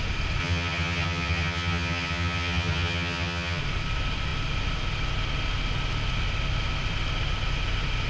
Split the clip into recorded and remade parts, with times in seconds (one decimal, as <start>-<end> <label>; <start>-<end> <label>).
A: 0.0-0.4 recorded; 0.4-3.6 remade; 3.6-8.1 recorded